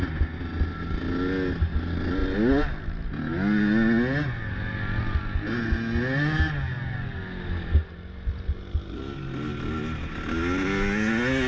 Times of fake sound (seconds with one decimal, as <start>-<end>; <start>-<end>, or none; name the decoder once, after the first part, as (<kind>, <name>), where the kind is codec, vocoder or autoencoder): none

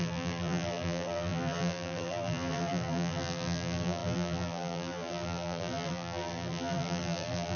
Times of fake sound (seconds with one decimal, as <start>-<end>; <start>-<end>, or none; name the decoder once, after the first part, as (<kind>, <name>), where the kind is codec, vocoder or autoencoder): 0.0-7.6 (vocoder, BigVGAN v2)